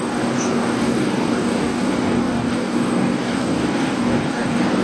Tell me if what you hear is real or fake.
fake